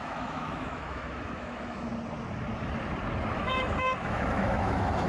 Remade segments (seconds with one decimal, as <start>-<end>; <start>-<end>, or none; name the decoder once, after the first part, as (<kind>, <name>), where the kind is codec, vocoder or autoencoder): 0.0-1.9 (autoencoder, DAC-VAE); 3.3-5.1